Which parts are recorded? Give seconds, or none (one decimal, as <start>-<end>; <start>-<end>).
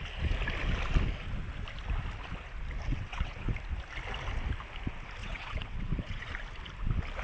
0.0-2.9; 3.5-5.2; 6.3-7.2